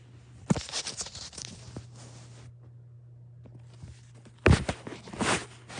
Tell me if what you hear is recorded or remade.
recorded